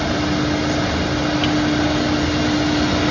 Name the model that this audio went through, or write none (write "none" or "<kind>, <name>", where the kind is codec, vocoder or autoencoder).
none